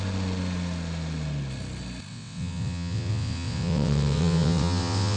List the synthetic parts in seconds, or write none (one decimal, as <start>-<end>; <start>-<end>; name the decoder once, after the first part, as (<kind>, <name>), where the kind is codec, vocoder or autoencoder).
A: 2.1-5.2 (vocoder, WaveNeXt)